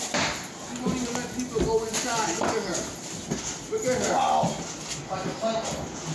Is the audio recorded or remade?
recorded